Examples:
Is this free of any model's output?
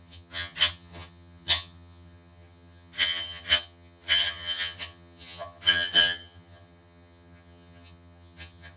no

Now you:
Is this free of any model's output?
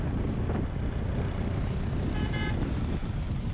yes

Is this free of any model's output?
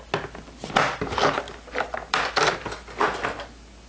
yes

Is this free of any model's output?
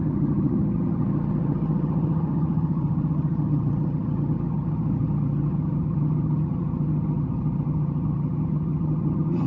no